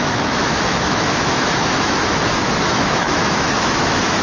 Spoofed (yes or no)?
yes